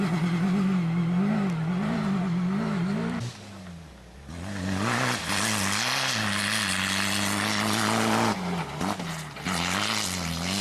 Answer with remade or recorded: recorded